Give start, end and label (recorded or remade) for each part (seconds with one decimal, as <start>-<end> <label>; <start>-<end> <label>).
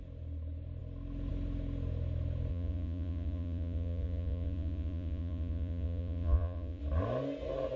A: 0.0-2.5 recorded; 2.5-6.8 remade; 6.8-7.8 recorded